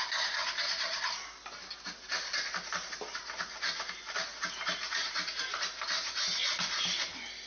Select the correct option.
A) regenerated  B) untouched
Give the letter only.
B